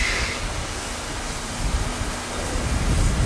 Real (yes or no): yes